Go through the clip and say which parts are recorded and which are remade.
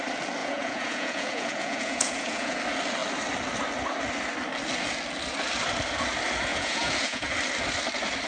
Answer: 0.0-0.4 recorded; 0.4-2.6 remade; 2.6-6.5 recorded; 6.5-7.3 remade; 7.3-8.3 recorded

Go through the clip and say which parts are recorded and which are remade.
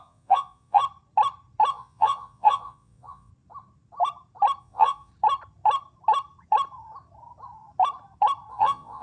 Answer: 0.0-0.8 remade; 0.8-1.7 recorded; 1.7-3.3 remade; 3.3-4.6 recorded; 4.6-5.1 remade; 5.1-8.5 recorded; 8.5-9.0 remade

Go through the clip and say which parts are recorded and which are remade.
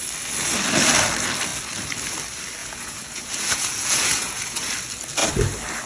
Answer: 0.0-2.6 recorded; 2.6-4.7 remade; 4.7-5.9 recorded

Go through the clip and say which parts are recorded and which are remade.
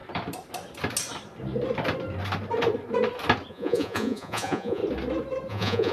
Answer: 0.0-3.5 recorded; 3.5-4.8 remade; 4.8-5.5 recorded; 5.5-5.9 remade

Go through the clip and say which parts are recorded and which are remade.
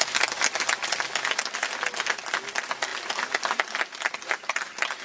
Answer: 0.0-5.0 recorded